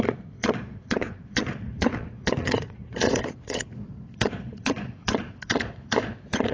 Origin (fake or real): fake